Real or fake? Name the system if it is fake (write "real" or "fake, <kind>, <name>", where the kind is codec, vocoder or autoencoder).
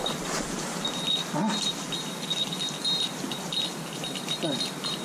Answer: real